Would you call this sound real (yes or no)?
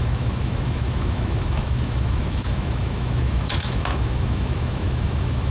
no